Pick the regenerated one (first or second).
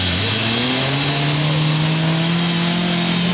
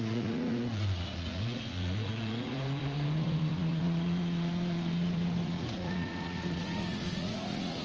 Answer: second